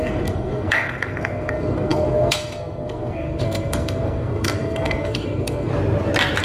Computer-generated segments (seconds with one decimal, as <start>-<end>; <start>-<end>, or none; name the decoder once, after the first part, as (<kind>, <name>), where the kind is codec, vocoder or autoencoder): 0.0-5.7 (codec, SNAC)